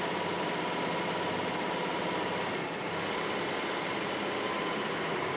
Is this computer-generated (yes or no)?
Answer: no